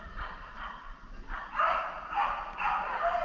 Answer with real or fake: fake